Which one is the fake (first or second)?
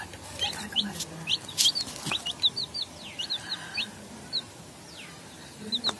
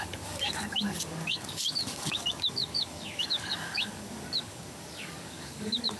second